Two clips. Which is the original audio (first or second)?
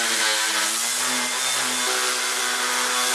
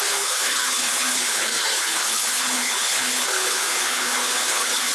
first